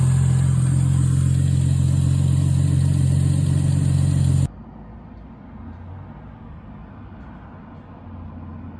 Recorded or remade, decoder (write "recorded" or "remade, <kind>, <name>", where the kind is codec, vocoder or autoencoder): recorded